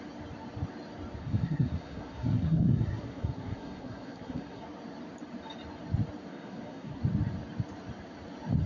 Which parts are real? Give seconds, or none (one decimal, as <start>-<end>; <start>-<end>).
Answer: 0.0-1.2; 4.6-6.3; 7.0-8.7